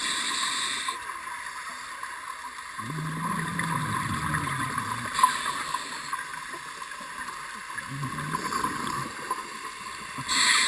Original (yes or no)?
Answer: yes